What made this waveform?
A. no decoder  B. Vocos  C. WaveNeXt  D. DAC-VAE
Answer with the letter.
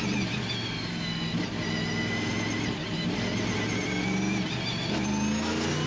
A